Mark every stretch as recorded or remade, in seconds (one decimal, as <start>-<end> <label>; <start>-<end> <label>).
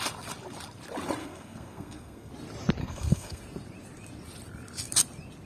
0.0-1.2 recorded; 1.2-2.3 remade; 2.3-2.8 recorded; 2.8-3.4 remade; 3.4-5.5 recorded